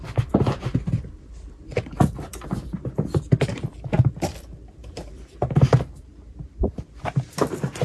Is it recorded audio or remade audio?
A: remade